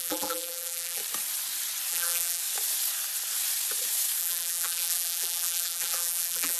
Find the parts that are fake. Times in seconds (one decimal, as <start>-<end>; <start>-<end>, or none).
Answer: 0.0-1.0; 1.9-2.4; 4.2-6.6